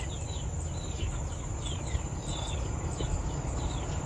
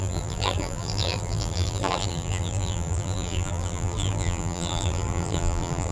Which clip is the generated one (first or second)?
second